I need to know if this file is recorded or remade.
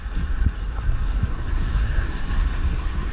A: remade